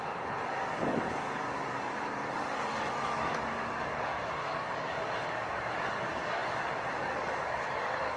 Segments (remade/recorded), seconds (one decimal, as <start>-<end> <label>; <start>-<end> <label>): 0.0-8.2 remade